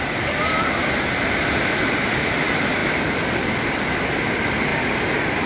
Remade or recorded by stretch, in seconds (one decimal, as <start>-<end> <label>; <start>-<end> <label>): 0.0-2.8 recorded; 2.8-3.5 remade; 3.5-4.7 recorded; 4.7-5.5 remade